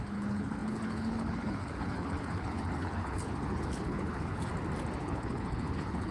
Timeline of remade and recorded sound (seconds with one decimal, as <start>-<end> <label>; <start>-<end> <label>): 0.0-4.5 remade; 4.5-5.0 recorded; 5.0-6.1 remade